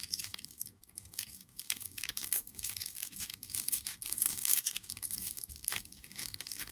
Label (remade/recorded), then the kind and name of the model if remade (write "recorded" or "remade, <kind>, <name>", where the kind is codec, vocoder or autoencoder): remade, codec, DAC